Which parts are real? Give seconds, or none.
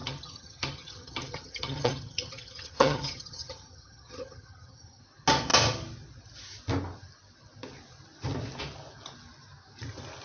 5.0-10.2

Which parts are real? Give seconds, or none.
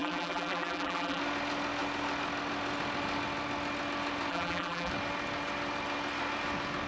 1.2-4.3; 4.9-6.9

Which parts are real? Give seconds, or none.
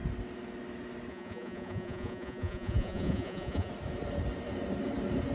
0.0-1.1; 3.7-5.3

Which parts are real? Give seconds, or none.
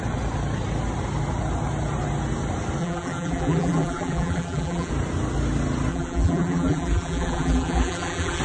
0.0-2.8; 4.9-5.9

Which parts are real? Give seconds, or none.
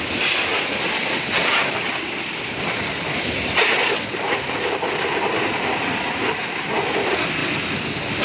0.0-1.4; 2.6-8.2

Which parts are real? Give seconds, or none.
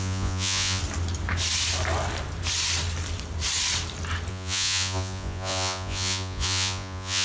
0.8-4.3